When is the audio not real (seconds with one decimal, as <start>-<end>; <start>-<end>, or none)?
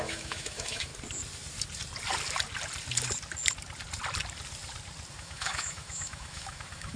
0.0-0.9; 5.1-7.0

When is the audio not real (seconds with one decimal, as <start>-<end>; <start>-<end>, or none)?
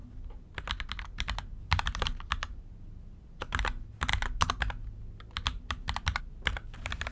none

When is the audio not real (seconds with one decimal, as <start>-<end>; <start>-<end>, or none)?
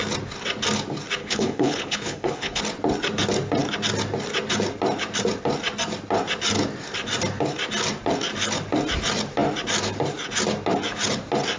1.2-2.6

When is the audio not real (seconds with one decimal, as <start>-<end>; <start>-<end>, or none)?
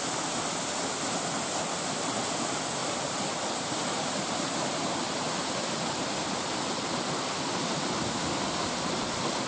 2.8-7.1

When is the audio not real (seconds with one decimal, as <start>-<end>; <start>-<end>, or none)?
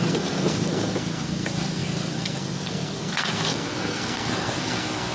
0.0-5.1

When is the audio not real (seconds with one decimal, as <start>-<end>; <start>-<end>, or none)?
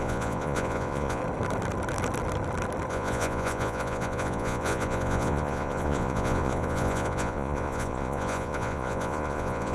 0.0-1.2; 2.9-9.7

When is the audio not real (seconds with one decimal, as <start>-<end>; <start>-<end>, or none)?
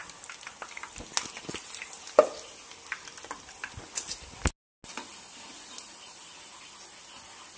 none